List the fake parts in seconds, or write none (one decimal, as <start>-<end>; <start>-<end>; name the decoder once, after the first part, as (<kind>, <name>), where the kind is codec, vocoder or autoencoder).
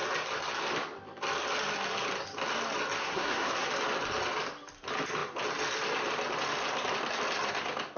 3.0-3.7 (codec, SNAC)